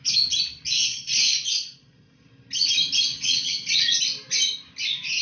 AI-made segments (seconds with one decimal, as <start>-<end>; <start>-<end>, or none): 0.9-2.3; 3.1-4.0